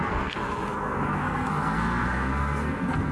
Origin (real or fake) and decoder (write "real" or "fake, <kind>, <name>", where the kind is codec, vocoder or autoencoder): fake, codec, SNAC